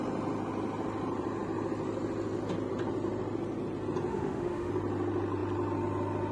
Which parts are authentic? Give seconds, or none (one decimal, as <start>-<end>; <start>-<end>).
0.0-4.1; 4.7-6.3